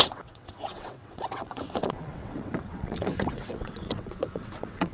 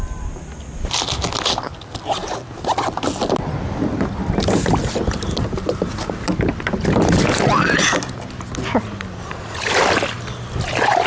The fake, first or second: first